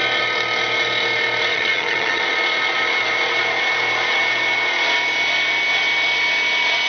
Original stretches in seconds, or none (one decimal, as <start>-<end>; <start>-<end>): 0.0-1.5; 2.2-6.9